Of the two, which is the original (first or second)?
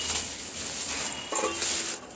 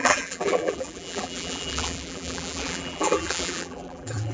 first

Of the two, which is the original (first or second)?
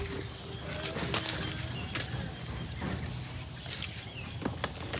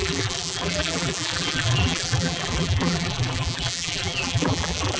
first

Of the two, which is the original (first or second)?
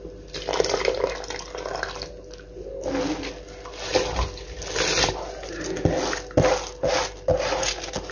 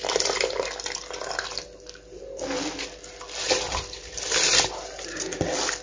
first